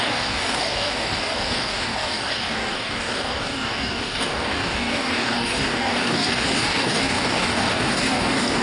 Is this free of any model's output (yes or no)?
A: no